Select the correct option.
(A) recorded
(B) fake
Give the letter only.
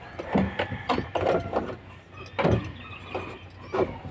A